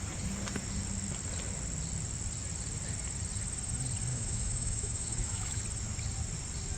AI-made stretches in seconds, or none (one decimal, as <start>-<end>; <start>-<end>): 4.1-5.6